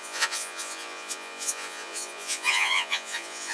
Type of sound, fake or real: fake